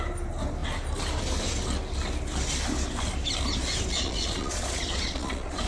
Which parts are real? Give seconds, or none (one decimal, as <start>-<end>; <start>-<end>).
0.0-3.9